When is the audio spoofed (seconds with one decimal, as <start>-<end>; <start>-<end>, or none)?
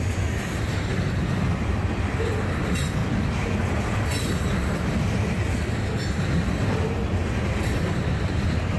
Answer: none